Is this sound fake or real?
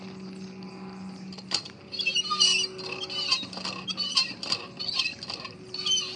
real